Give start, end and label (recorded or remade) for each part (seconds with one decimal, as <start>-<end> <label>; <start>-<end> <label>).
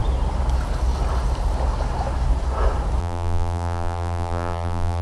0.0-3.0 recorded; 3.0-5.0 remade